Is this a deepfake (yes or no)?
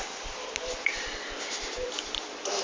yes